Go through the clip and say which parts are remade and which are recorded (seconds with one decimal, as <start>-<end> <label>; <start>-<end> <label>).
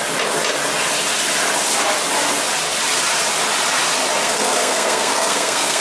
0.0-4.2 recorded; 4.2-5.8 remade